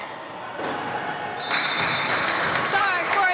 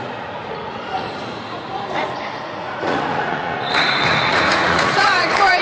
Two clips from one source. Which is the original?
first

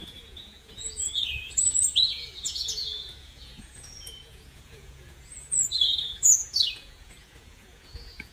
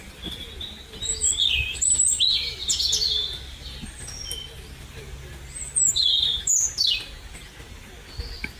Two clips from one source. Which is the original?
second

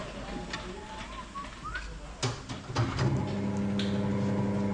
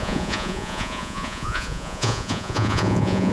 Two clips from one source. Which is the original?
first